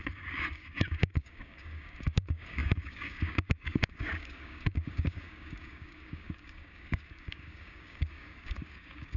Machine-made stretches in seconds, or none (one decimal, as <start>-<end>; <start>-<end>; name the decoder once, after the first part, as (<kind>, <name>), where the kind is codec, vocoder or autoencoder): 0.0-9.2 (codec, DAC)